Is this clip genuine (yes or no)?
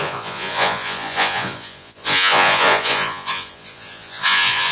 no